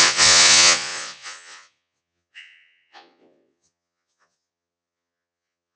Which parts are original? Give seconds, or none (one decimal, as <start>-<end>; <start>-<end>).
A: none

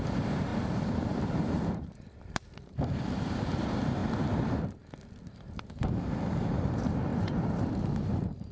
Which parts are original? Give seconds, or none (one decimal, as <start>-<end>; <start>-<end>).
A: 4.0-5.2

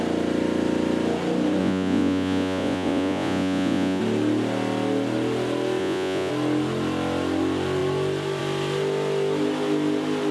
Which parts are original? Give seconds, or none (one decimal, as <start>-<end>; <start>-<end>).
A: 0.0-1.6; 4.0-5.8; 6.3-10.3

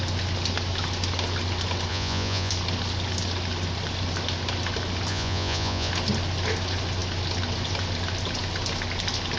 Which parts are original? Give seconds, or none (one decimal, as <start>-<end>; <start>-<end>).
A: 0.0-1.9; 2.5-5.1; 5.9-9.4

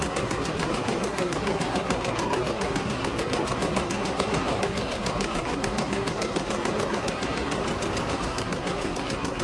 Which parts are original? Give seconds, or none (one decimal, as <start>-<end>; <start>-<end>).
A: 7.6-8.1

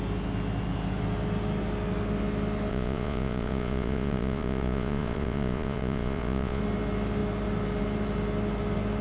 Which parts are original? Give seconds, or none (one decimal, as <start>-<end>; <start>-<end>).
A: 0.0-2.7; 6.6-9.0

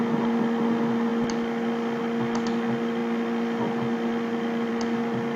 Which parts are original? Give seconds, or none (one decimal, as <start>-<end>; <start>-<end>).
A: 0.0-5.4

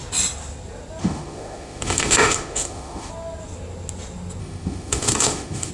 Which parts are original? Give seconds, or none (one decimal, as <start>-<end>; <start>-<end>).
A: 0.0-1.0; 3.1-4.4